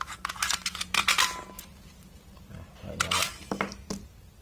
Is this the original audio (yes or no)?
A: yes